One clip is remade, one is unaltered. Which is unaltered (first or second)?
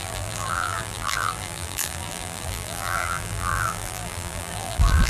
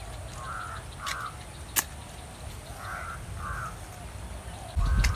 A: second